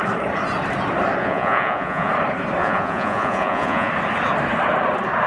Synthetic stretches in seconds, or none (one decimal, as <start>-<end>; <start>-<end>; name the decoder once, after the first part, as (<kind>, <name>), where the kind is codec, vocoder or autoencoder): 1.2-2.1 (vocoder, Vocos); 2.6-3.9